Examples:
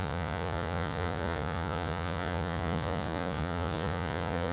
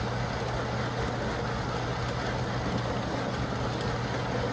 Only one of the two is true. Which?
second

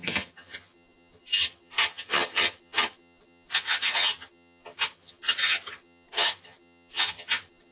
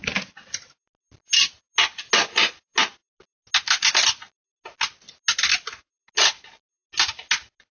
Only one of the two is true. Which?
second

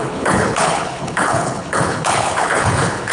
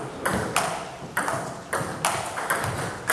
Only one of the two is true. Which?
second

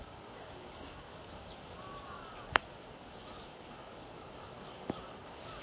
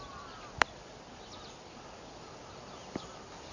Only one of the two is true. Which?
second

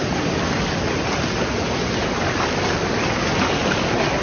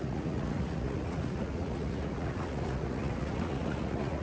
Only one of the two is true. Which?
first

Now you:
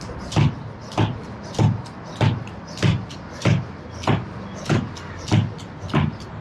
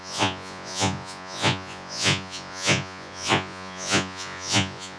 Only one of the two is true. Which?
first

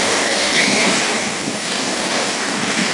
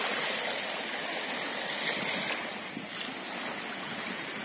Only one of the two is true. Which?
second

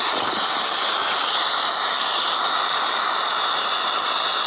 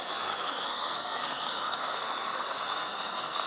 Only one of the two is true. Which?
first